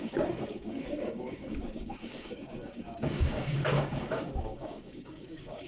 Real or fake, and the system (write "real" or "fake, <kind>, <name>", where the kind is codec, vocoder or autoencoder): fake, codec, DAC